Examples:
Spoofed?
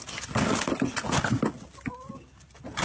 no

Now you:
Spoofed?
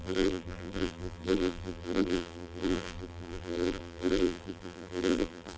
yes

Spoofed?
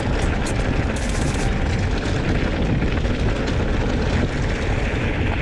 no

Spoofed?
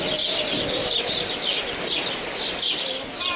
no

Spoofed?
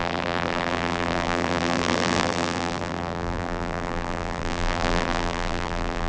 yes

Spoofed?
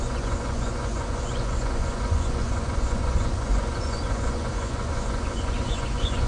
yes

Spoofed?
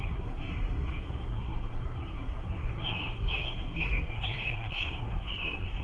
yes